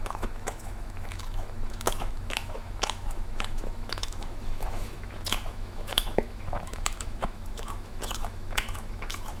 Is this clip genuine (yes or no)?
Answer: no